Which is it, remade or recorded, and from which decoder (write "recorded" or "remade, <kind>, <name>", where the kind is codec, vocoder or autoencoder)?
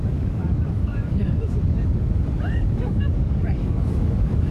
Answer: remade, codec, DAC